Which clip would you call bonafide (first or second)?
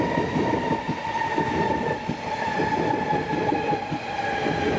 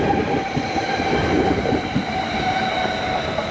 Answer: first